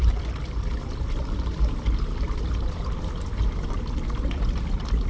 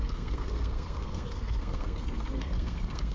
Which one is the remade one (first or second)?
second